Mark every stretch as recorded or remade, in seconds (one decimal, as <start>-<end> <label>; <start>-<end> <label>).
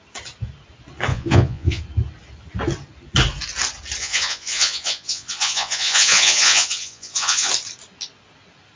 0.0-1.1 recorded; 1.1-1.8 remade; 1.8-4.0 recorded; 4.0-7.5 remade; 7.5-8.8 recorded